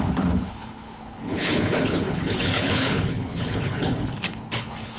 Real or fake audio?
fake